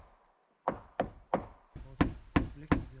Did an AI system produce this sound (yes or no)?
no